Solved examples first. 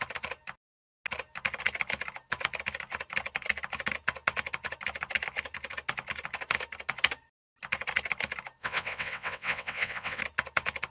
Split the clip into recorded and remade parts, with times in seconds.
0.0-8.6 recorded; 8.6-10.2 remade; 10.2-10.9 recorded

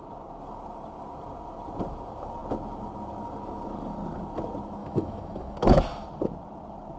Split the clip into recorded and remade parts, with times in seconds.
0.0-4.8 recorded; 4.8-5.8 remade; 5.8-7.0 recorded

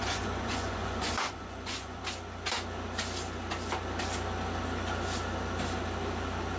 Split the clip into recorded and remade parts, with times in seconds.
0.0-2.0 remade; 2.0-6.6 recorded

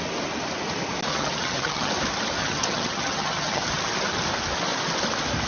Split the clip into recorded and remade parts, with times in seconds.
0.0-1.1 recorded; 1.1-1.9 remade; 1.9-2.4 recorded; 2.4-3.7 remade; 3.7-5.5 recorded

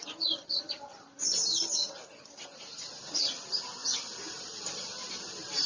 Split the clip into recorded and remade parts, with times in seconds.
0.0-3.4 remade; 3.4-3.8 recorded; 3.8-5.1 remade; 5.1-5.7 recorded

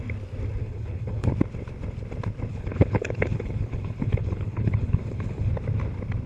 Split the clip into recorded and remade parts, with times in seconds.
0.0-0.6 recorded; 0.6-1.3 remade; 1.3-2.5 recorded; 2.5-5.5 remade; 5.5-6.3 recorded

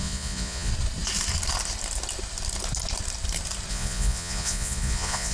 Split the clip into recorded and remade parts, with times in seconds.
0.0-0.7 remade; 0.7-3.7 recorded; 3.7-5.3 remade

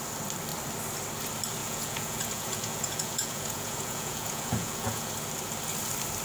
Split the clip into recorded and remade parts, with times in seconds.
0.0-1.6 recorded; 1.6-5.1 remade; 5.1-6.2 recorded